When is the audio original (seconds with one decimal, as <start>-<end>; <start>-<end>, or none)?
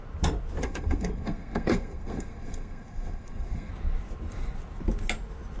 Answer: 0.0-0.6; 3.7-5.6